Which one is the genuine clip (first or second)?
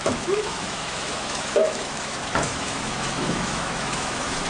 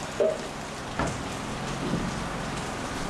second